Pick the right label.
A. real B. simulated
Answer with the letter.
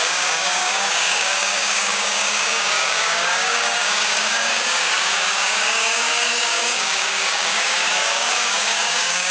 B